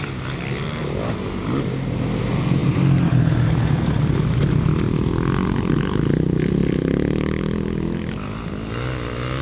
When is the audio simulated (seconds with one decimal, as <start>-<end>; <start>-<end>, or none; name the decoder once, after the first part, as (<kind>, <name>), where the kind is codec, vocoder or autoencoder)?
6.6-7.4 (vocoder, BigVGAN v2)